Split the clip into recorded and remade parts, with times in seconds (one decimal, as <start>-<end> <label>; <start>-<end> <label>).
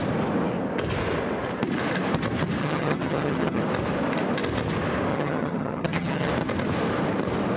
0.0-2.6 recorded; 2.6-3.6 remade; 3.6-5.1 recorded; 5.1-6.3 remade; 6.3-7.6 recorded